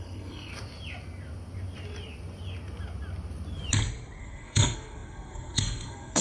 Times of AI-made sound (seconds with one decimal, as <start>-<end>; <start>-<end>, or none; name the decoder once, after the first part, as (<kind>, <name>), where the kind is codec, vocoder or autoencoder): 0.0-0.5 (codec, SNAC); 4.2-6.2